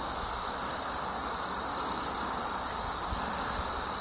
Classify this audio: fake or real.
real